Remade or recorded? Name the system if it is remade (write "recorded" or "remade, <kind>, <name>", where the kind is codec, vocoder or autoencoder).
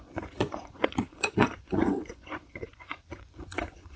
remade, vocoder, Vocos